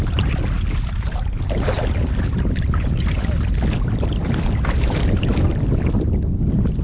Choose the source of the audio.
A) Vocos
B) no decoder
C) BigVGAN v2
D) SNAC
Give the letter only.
B